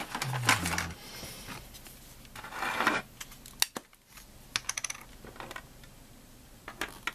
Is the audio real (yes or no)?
yes